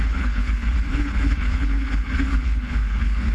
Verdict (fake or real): fake